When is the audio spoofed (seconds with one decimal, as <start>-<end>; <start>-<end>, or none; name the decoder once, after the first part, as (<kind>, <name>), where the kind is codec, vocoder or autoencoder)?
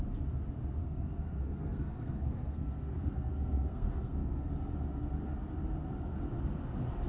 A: 0.8-4.5 (codec, SNAC)